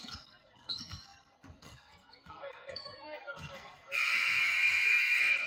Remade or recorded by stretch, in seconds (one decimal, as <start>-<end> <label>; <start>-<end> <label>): 0.0-5.5 remade